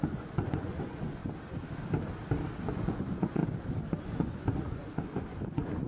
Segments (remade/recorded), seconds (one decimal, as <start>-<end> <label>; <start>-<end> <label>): 0.0-1.2 remade; 1.2-2.7 recorded; 2.7-3.4 remade; 3.4-4.0 recorded; 4.0-5.9 remade